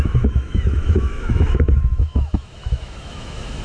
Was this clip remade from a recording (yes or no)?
yes